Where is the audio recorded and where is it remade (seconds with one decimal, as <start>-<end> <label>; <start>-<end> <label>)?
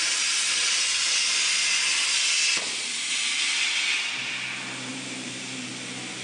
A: 0.0-4.9 recorded; 4.9-5.7 remade; 5.7-6.2 recorded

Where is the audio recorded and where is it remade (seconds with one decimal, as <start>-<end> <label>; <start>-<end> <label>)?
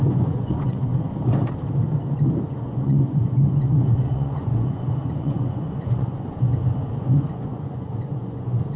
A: 0.0-0.9 remade; 0.9-2.4 recorded; 2.4-8.8 remade